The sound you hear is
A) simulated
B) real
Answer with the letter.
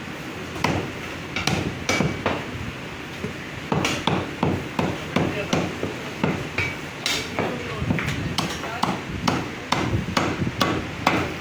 B